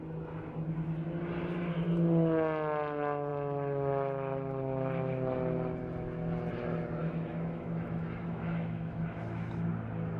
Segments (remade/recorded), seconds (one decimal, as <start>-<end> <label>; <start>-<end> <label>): 0.0-7.0 recorded; 7.0-9.7 remade; 9.7-10.2 recorded